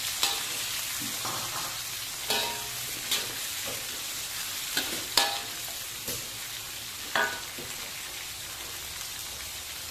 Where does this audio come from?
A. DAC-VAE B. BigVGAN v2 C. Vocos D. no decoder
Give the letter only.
D